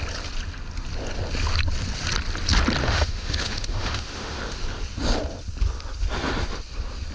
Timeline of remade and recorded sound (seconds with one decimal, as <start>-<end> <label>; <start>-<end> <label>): 0.0-2.8 recorded; 2.8-4.4 remade; 4.4-7.1 recorded

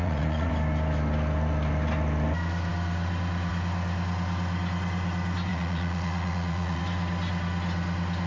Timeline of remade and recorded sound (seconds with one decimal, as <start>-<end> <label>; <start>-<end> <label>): 0.0-0.5 remade; 0.5-5.5 recorded; 5.5-6.8 remade; 6.8-8.3 recorded

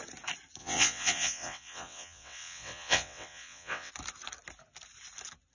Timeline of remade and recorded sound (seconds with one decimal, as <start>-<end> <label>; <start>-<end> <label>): 0.0-0.6 recorded; 0.6-3.9 remade; 3.9-5.5 recorded